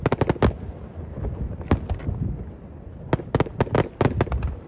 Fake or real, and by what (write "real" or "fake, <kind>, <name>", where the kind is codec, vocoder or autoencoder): real